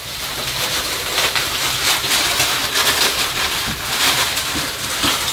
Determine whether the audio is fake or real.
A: fake